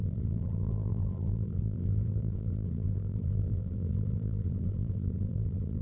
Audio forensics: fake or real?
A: fake